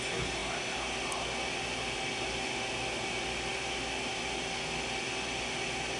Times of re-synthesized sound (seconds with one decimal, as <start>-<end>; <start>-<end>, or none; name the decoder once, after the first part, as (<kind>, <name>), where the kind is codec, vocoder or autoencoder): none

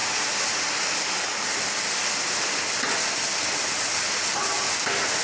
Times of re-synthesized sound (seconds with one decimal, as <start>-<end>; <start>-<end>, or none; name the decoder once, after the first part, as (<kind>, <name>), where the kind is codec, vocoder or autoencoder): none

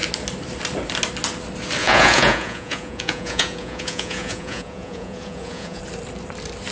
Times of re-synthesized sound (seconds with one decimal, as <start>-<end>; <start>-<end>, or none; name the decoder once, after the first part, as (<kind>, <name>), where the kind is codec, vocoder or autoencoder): 1.8-5.8 (vocoder, Vocos)

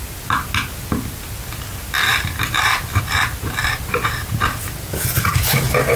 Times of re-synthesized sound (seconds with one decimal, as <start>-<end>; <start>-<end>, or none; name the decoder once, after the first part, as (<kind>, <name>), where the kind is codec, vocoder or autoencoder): 2.1-3.0 (vocoder, BigVGAN v2); 3.6-4.3

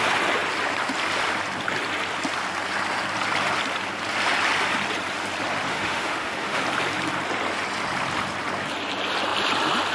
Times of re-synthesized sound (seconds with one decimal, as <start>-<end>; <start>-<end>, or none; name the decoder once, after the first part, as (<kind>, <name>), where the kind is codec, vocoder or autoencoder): 5.7-6.6 (autoencoder, DAC-VAE)

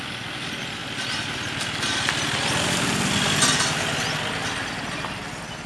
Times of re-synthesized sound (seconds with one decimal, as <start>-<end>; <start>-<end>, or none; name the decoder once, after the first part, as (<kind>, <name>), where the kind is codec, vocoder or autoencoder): none

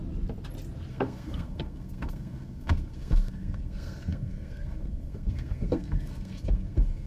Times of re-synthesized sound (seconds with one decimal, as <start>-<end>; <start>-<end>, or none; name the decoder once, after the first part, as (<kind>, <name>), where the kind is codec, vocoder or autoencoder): 0.9-7.1 (codec, SNAC)

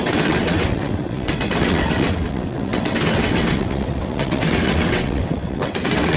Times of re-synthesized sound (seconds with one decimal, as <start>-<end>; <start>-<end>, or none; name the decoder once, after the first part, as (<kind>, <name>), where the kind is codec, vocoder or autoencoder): 0.0-6.2 (vocoder, WaveNeXt)